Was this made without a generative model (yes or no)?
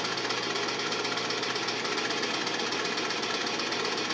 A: yes